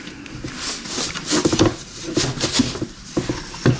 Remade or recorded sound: recorded